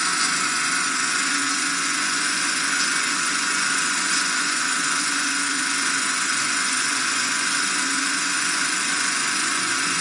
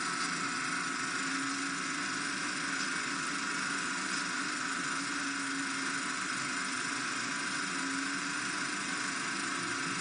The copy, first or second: first